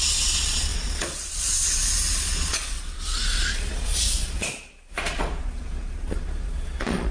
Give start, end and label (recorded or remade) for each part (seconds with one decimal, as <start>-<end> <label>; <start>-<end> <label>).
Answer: 0.0-7.1 remade